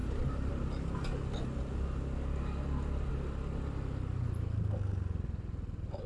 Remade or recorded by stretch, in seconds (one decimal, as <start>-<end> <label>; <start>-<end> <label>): 0.0-0.5 remade; 0.5-6.1 recorded